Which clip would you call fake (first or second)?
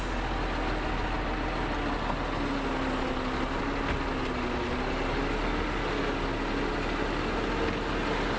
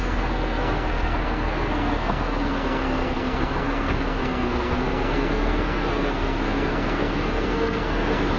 second